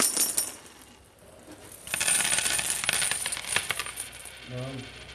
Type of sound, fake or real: real